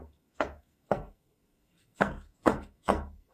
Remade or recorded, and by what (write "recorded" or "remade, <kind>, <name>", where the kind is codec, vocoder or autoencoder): remade, codec, SNAC